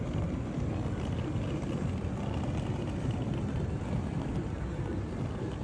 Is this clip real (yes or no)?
yes